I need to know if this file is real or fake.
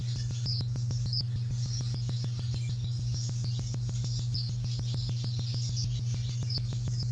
real